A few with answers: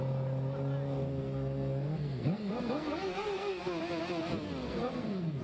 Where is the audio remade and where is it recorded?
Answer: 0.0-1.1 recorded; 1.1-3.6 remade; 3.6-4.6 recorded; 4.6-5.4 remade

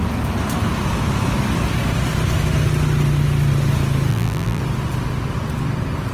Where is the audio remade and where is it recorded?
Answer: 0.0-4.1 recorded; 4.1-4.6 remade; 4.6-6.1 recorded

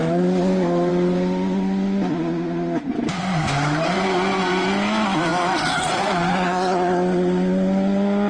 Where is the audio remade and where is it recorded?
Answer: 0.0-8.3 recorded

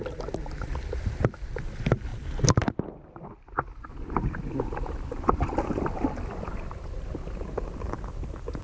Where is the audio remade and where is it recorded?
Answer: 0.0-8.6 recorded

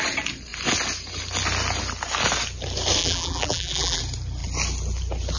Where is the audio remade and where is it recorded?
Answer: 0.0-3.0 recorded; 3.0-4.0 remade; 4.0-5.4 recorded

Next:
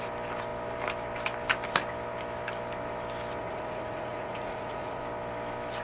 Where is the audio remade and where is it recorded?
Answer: 0.0-3.4 recorded; 3.4-5.0 remade; 5.0-5.8 recorded

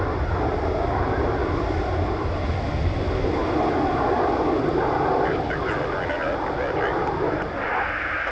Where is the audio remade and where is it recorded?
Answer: 0.0-8.3 recorded

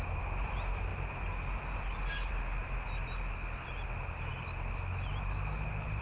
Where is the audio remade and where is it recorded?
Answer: 0.0-6.0 recorded